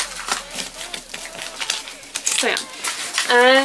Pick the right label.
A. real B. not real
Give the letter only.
A